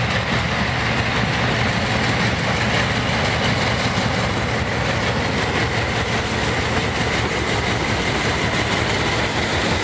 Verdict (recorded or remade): recorded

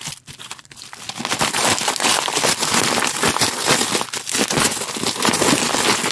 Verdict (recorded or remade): recorded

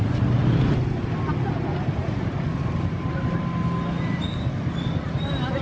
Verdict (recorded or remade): recorded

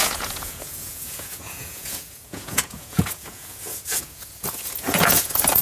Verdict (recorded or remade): remade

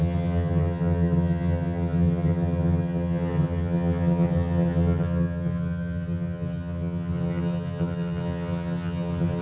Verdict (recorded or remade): remade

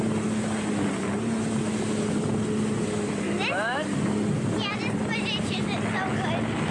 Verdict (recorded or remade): recorded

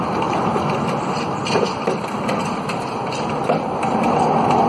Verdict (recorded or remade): recorded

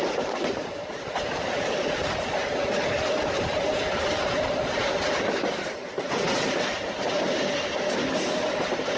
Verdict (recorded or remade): recorded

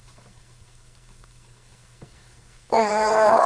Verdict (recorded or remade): remade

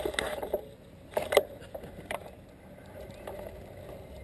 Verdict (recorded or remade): recorded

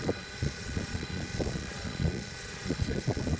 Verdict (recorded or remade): remade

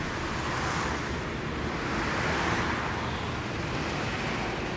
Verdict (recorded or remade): recorded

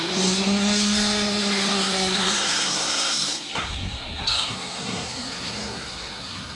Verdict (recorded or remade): remade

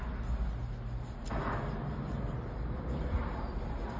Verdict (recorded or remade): recorded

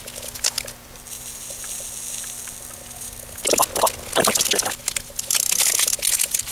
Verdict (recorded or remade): recorded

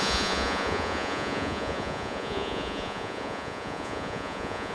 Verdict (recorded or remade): remade